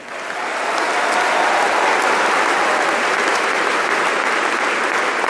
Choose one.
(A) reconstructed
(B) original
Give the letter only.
B